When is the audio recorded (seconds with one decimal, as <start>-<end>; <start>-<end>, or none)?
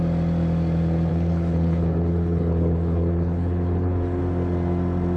0.0-1.1; 4.2-5.2